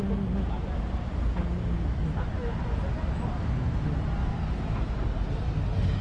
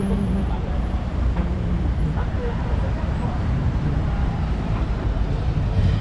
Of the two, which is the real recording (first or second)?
first